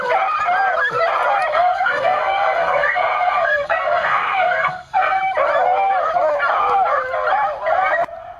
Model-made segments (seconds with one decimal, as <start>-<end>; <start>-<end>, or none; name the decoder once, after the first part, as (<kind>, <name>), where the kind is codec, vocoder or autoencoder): 1.5-5.2 (codec, SNAC)

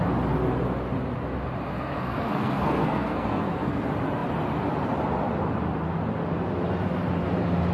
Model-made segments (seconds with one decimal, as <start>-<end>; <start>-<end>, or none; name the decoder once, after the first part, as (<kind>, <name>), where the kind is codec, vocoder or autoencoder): 1.7-3.8 (codec, SNAC)

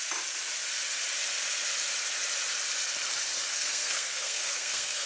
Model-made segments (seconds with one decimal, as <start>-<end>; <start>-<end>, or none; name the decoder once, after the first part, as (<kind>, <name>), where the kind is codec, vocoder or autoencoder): 3.5-5.1 (codec, SNAC)

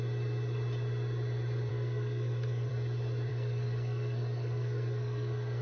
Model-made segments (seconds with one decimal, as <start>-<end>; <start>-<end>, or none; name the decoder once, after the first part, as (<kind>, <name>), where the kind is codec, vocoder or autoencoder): 1.7-2.7 (codec, SNAC); 3.3-5.6

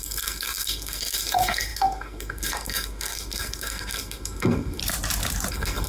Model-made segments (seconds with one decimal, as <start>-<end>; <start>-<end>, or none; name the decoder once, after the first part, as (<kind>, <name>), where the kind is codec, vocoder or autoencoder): 0.0-4.8 (codec, SNAC); 5.5-5.9